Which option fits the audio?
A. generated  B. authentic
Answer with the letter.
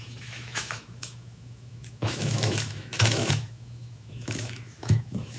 A